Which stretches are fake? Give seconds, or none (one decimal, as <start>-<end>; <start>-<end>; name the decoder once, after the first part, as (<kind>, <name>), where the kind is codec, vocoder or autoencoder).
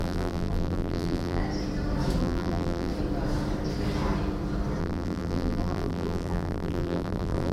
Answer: 0.0-1.4 (vocoder, BigVGAN v2); 2.2-2.9; 4.8-7.5